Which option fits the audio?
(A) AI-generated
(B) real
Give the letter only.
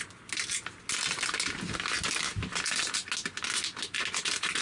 B